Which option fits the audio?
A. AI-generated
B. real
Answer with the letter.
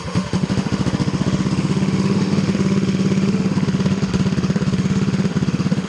A